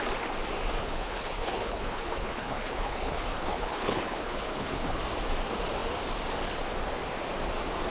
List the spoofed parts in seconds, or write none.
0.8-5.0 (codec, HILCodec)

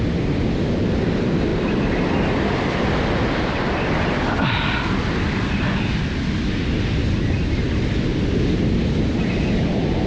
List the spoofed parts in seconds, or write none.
none